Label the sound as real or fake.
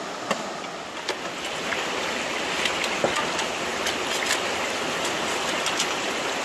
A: real